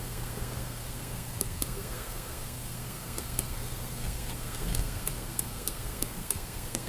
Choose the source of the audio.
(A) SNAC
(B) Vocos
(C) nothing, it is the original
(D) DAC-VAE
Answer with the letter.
A